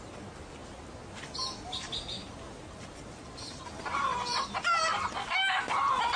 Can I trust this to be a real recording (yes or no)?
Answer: yes